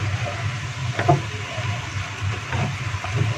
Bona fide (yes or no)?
yes